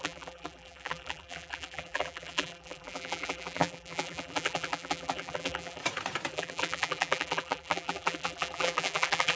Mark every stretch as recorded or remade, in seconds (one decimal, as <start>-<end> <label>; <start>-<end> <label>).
0.0-5.8 remade; 5.8-6.3 recorded; 6.3-9.4 remade